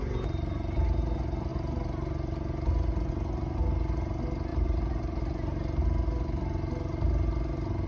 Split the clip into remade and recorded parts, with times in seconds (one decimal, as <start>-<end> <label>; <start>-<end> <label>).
0.0-4.5 recorded; 4.5-5.2 remade; 5.2-7.9 recorded